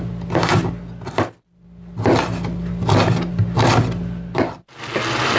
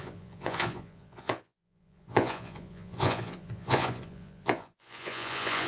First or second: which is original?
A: first